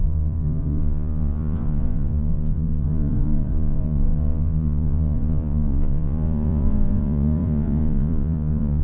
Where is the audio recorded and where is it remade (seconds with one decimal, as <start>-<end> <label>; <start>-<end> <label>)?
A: 0.0-8.8 remade